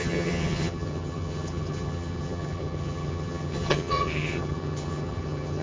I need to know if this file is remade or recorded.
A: remade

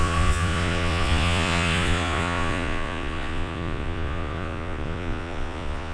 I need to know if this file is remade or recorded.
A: remade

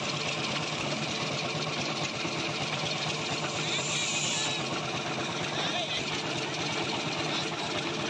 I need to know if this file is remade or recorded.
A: recorded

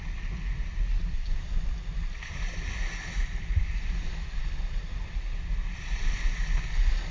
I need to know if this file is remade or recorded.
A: recorded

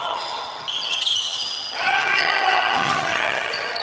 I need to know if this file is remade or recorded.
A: remade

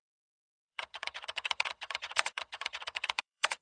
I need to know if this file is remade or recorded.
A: remade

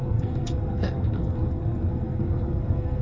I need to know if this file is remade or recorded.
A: remade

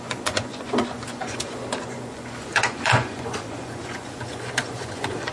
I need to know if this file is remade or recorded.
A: remade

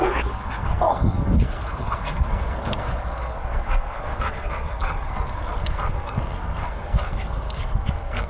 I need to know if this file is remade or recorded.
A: remade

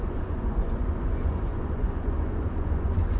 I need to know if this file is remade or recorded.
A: remade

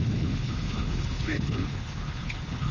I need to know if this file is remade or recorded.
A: remade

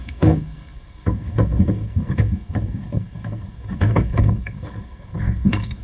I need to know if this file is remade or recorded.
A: remade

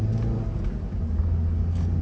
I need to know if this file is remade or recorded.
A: recorded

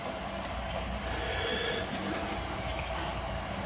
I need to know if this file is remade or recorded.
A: recorded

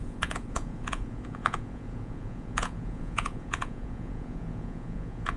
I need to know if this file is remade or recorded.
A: remade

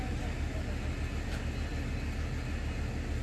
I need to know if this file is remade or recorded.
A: recorded